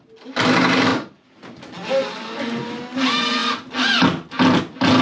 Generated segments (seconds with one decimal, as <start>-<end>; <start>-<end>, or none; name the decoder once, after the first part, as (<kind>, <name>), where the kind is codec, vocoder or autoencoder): 0.9-1.6 (vocoder, BigVGAN v2)